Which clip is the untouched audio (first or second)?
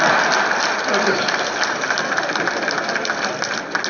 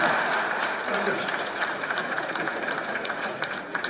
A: first